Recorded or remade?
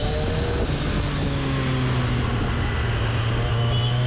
recorded